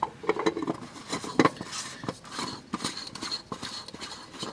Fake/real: real